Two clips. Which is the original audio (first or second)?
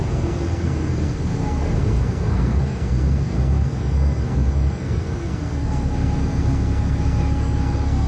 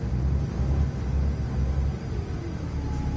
second